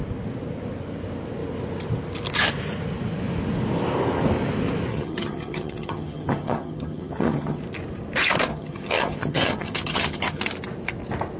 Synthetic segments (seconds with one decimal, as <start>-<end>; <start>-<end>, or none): 4.9-7.6; 8.5-10.4